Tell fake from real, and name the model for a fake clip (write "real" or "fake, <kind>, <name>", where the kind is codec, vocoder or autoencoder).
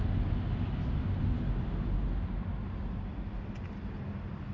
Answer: real